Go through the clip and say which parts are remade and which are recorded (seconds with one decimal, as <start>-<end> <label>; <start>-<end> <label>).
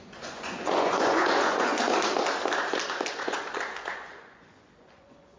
0.0-1.7 remade; 1.7-3.1 recorded; 3.1-5.4 remade